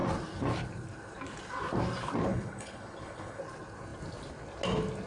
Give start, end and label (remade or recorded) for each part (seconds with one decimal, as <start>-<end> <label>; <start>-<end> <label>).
0.0-2.3 recorded; 2.3-3.4 remade; 3.4-5.1 recorded